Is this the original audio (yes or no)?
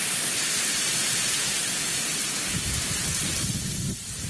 yes